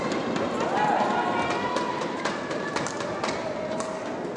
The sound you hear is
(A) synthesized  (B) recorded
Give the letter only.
B